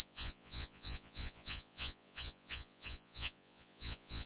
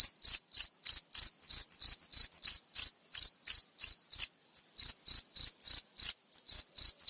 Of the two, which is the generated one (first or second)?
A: first